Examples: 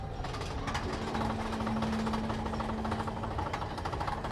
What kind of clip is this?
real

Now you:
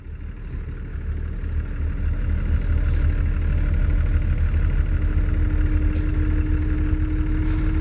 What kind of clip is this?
real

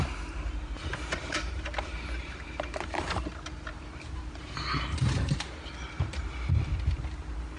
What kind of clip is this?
fake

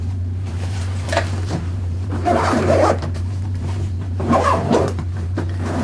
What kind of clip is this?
fake